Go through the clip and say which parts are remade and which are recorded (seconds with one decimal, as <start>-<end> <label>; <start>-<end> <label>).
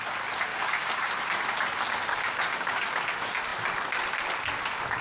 0.0-0.5 recorded; 0.5-1.1 remade; 1.1-2.1 recorded; 2.1-3.0 remade; 3.0-5.0 recorded